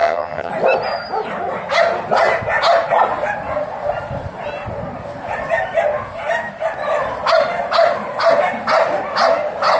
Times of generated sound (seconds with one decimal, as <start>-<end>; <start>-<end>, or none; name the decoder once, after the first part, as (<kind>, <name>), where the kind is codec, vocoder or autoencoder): 0.0-0.5 (vocoder, HiFi-GAN)